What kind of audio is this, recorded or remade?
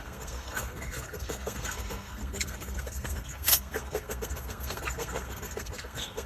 remade